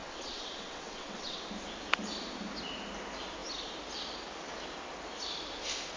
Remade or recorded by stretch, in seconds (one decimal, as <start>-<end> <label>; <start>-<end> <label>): 0.0-1.4 remade; 1.4-6.0 recorded